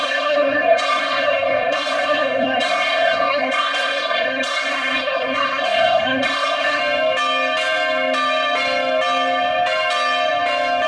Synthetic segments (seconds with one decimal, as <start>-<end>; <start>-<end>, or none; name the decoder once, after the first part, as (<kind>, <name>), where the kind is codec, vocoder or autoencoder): 0.0-6.8 (codec, SNAC)